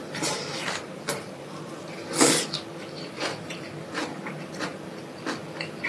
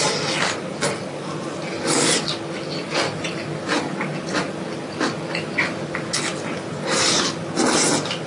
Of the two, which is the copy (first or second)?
first